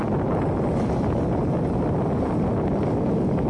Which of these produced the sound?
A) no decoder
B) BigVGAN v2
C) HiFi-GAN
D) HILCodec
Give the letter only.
A